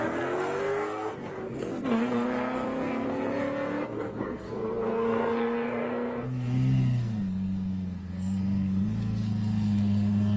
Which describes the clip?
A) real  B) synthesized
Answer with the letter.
B